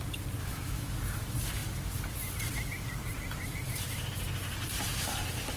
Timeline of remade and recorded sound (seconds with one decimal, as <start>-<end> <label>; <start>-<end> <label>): 0.0-0.4 recorded; 0.4-1.0 remade; 1.0-5.6 recorded

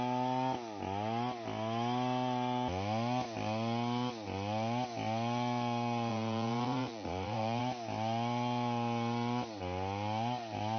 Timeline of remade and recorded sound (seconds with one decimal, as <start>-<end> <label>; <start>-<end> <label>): 0.0-6.1 recorded; 6.1-7.6 remade; 7.6-10.8 recorded